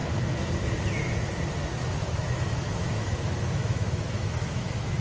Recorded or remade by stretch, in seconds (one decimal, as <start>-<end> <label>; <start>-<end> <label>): 0.0-0.5 remade; 0.5-2.0 recorded; 2.0-5.0 remade